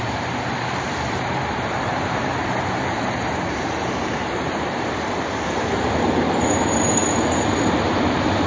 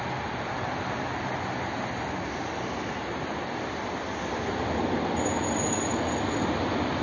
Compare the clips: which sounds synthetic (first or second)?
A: first